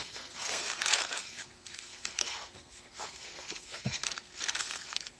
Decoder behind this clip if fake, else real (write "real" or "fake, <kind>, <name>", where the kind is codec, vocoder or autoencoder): fake, codec, SNAC